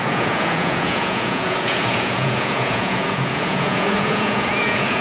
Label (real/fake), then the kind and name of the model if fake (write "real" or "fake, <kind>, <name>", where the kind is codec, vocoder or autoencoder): fake, vocoder, Vocos